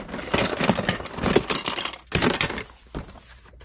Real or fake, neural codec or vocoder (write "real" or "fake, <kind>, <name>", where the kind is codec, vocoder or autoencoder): real